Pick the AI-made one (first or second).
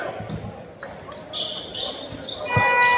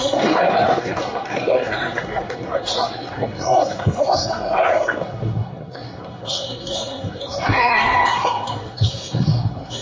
second